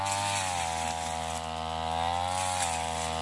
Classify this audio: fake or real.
real